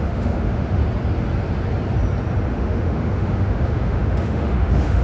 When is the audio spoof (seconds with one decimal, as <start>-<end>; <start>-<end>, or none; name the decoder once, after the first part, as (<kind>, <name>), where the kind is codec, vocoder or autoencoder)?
0.0-0.8 (autoencoder, DAC-VAE); 2.5-5.0